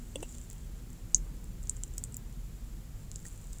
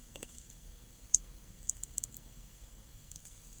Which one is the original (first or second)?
first